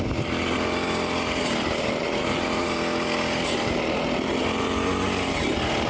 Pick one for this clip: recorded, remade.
recorded